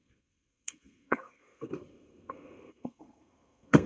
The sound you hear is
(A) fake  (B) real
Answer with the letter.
A